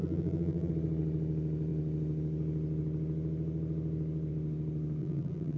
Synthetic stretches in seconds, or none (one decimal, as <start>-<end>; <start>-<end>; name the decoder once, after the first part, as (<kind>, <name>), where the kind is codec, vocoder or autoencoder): 0.0-0.7 (vocoder, BigVGAN v2); 5.0-5.6